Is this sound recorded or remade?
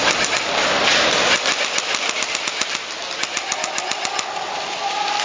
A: recorded